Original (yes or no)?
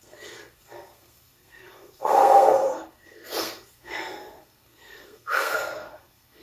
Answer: no